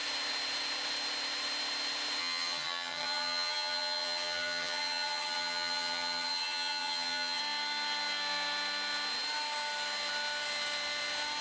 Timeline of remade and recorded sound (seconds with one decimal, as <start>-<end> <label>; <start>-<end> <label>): 0.0-2.2 recorded; 2.2-7.4 remade; 7.4-11.4 recorded